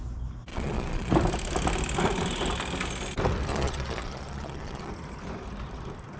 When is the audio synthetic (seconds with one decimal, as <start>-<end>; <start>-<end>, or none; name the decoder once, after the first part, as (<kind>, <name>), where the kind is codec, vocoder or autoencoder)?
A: 0.5-1.1 (vocoder, Vocos); 3.5-4.9